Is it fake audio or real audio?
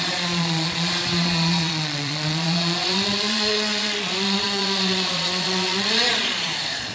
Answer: fake